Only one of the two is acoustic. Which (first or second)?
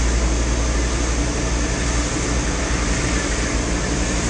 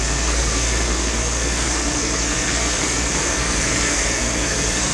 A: first